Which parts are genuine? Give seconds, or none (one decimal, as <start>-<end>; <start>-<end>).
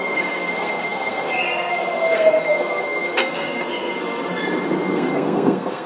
4.4-4.9